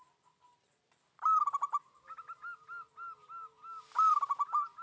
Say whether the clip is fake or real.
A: real